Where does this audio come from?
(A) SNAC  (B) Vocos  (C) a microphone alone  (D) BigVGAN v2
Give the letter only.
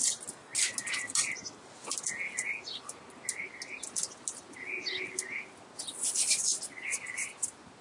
C